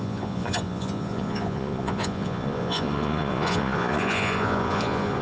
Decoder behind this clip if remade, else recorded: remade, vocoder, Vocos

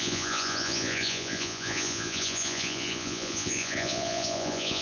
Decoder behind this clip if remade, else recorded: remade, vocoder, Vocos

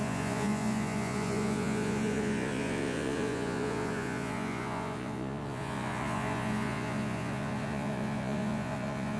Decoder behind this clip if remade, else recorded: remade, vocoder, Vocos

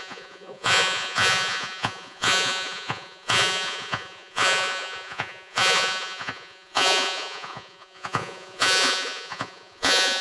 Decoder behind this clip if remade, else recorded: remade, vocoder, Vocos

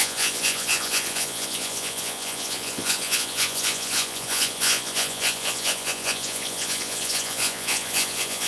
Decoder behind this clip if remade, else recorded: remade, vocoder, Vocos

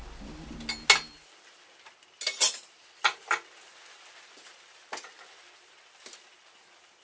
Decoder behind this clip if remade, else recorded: recorded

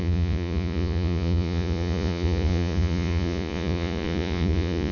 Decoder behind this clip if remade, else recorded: remade, vocoder, Vocos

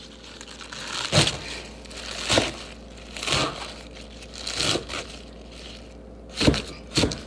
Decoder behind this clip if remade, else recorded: recorded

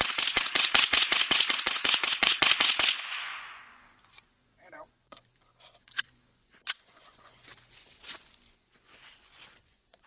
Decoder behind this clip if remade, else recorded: remade, vocoder, Vocos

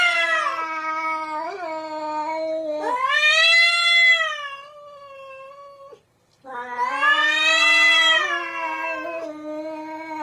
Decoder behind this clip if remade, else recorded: recorded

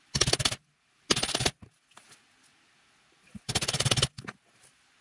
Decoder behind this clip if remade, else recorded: recorded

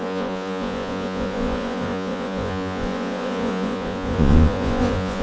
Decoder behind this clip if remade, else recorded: remade, vocoder, Vocos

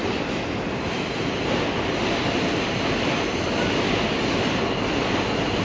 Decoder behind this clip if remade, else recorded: recorded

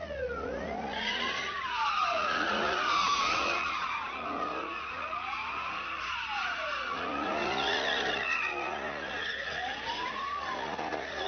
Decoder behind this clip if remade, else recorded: remade, vocoder, Vocos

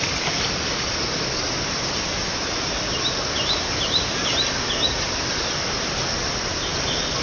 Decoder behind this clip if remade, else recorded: recorded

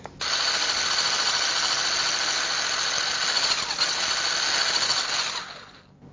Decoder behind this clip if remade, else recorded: recorded